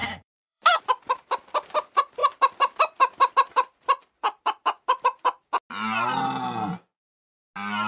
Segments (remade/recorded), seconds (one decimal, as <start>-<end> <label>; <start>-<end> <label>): 0.0-0.8 remade; 0.8-7.9 recorded